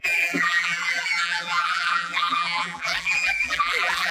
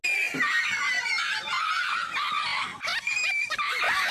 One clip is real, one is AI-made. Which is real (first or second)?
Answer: second